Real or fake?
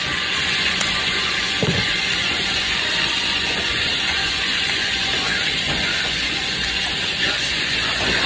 fake